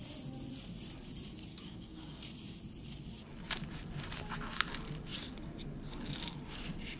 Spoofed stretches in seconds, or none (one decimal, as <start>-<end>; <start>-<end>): 1.5-2.2